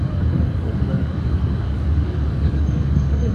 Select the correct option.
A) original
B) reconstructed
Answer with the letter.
B